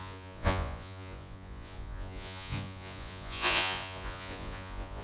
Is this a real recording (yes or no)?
no